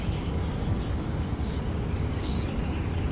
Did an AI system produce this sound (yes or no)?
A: yes